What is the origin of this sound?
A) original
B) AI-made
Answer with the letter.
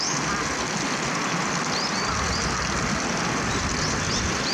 A